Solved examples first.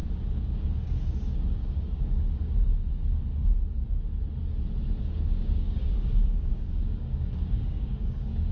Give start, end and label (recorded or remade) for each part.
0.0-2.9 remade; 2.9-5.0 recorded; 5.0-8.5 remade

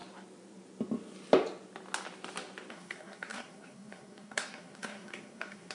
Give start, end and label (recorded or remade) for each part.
0.0-2.7 recorded; 2.7-5.7 remade

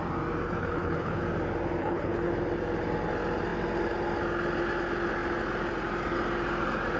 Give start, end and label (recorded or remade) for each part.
0.0-0.6 recorded; 0.6-1.2 remade; 1.2-1.8 recorded; 1.8-2.3 remade; 2.3-7.0 recorded

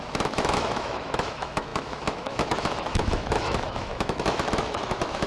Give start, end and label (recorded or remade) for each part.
0.0-5.3 remade

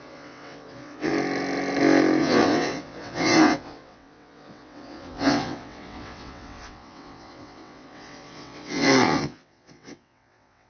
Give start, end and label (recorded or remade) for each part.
0.0-1.1 remade; 1.1-2.2 recorded; 2.2-10.7 remade

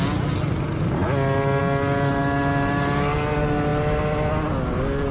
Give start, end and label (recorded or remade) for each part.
0.0-5.1 recorded

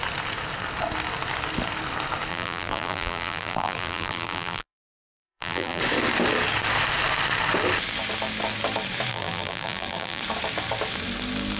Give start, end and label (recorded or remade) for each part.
0.0-2.3 recorded; 2.3-5.8 remade; 5.8-9.1 recorded; 9.1-10.2 remade; 10.2-11.6 recorded

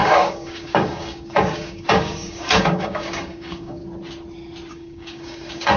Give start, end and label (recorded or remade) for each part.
0.0-3.8 remade; 3.8-4.7 recorded; 4.7-5.8 remade